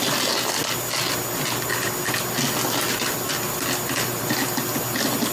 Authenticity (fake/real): real